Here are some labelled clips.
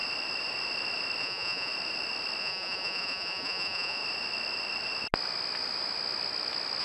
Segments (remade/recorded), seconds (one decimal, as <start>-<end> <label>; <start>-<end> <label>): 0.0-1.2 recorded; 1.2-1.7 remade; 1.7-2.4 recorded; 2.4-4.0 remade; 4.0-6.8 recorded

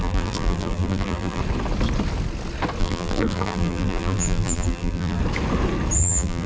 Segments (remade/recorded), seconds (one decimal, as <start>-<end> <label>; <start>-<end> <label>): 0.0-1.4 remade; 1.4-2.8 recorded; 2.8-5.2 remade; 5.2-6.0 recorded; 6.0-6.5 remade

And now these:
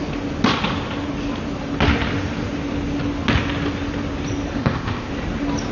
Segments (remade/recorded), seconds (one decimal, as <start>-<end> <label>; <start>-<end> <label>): 0.0-4.6 recorded; 4.6-5.1 remade; 5.1-5.7 recorded

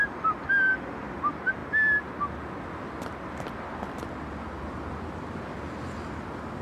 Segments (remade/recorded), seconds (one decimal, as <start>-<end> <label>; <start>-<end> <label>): 0.0-6.6 recorded